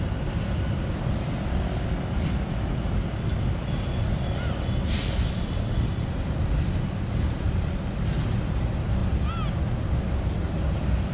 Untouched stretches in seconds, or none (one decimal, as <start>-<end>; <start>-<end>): 0.0-11.1